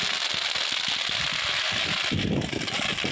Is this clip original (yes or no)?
yes